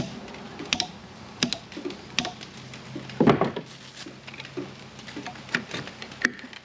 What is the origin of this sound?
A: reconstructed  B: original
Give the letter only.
B